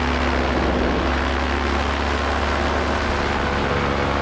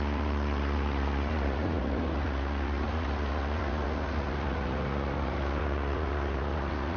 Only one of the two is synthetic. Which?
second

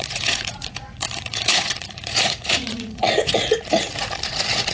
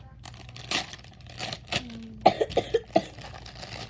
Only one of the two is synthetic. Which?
first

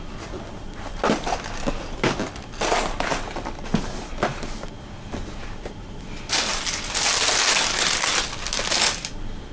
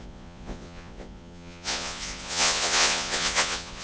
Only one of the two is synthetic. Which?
second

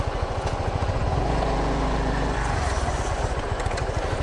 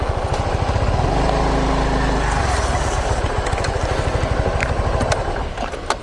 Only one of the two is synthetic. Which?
first